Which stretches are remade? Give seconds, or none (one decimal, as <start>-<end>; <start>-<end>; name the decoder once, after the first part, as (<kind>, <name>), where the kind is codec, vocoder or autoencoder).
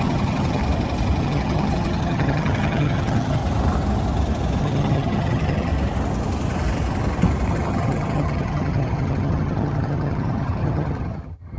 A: 0.0-0.6 (vocoder, HiFi-GAN); 1.2-3.4; 4.6-5.7; 7.5-11.6